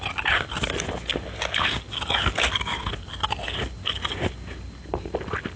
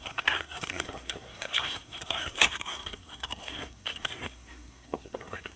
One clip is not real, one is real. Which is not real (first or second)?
second